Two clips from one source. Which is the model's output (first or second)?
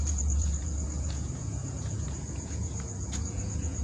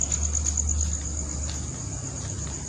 first